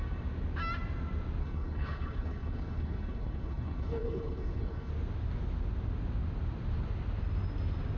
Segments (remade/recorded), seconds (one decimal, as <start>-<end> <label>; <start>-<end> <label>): 0.0-1.4 recorded; 1.4-4.9 remade; 4.9-8.0 recorded